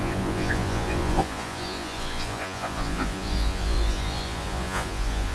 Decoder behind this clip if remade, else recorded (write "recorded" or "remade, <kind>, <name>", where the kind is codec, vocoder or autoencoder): remade, vocoder, Vocos